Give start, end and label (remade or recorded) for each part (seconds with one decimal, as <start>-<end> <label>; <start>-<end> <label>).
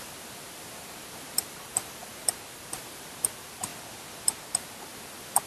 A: 0.0-3.7 remade; 3.7-4.5 recorded; 4.5-5.5 remade